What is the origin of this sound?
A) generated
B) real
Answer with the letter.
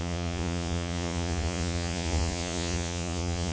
A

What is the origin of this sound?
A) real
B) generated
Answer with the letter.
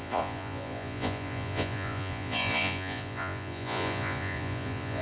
B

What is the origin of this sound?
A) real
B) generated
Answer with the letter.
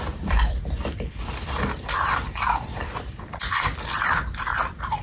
B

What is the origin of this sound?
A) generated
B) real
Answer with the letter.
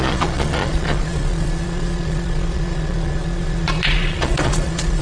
A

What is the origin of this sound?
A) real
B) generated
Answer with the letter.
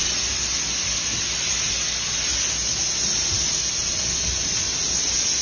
A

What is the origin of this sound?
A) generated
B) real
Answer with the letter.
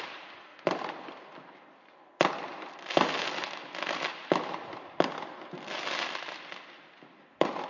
B